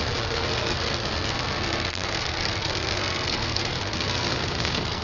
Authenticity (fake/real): fake